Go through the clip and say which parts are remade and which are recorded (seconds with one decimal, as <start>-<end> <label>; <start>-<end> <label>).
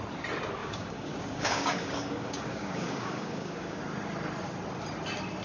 0.0-0.6 recorded; 0.6-3.8 remade; 3.8-5.4 recorded